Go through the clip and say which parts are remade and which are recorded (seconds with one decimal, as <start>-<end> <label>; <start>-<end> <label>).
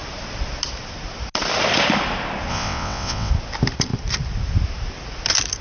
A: 0.0-2.5 recorded; 2.5-3.3 remade; 3.3-5.6 recorded